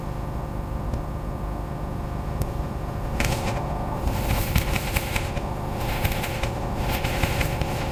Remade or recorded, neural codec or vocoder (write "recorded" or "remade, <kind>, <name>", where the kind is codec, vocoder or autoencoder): remade, autoencoder, DAC-VAE